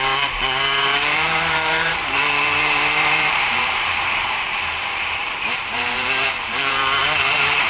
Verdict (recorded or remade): remade